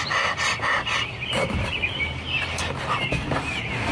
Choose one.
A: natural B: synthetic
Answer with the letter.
A